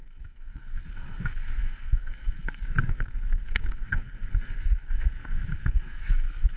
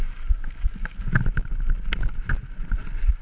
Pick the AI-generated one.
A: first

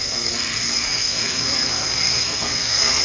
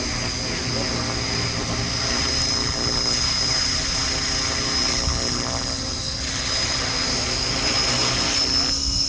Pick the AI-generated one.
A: first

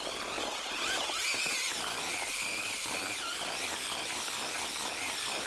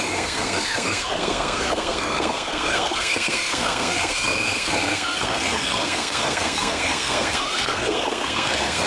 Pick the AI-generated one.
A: second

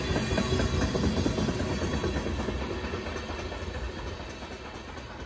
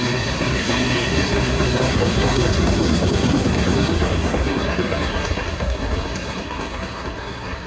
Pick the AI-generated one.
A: second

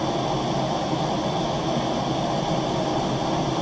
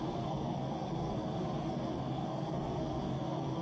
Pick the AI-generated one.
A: second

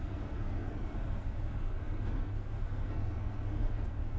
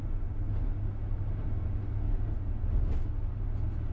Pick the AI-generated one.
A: first